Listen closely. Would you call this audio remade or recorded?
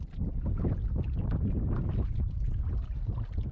recorded